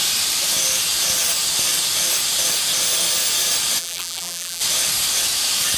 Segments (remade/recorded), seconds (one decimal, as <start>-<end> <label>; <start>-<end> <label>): 0.0-3.8 recorded; 3.8-4.6 remade; 4.6-5.8 recorded